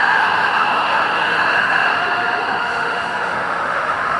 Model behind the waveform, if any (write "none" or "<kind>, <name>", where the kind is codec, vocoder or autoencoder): autoencoder, DAC-VAE